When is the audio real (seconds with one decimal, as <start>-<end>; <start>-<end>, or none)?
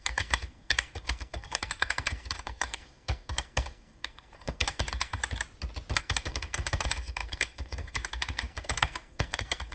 5.2-6.0